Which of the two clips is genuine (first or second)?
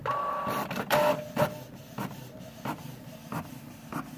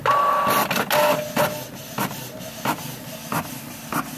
second